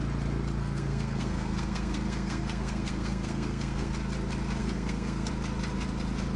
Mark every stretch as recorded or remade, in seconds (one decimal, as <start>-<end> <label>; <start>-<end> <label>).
0.0-0.6 recorded; 0.6-3.9 remade; 3.9-4.6 recorded; 4.6-5.3 remade; 5.3-6.4 recorded